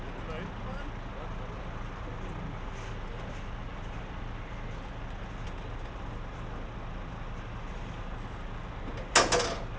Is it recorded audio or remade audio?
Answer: recorded